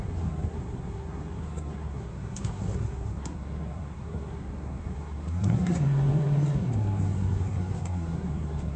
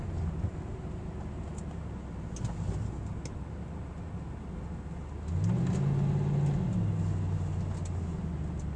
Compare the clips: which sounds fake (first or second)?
first